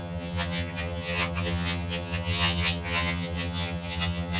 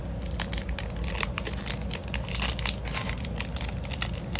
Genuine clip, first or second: second